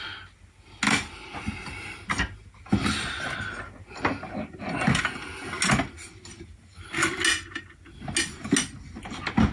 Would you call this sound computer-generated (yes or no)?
no